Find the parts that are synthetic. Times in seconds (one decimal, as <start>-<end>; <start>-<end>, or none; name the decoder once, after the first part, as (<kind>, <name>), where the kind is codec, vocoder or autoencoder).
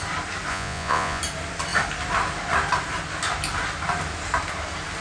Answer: 0.5-1.2 (vocoder, Vocos)